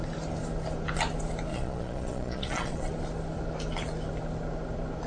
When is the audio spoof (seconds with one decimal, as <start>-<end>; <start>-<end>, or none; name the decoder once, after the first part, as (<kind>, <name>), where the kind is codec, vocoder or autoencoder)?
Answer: 1.5-2.9 (vocoder, Vocos)